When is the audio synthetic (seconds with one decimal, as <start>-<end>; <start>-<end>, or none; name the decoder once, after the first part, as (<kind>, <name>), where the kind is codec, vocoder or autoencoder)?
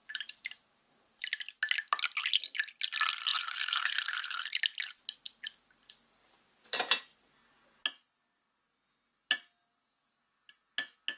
0.0-1.4 (vocoder, BigVGAN v2); 3.3-4.6